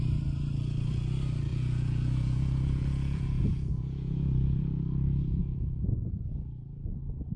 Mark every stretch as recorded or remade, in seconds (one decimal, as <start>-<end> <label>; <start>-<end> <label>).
0.0-1.5 recorded; 1.5-5.9 remade; 5.9-7.4 recorded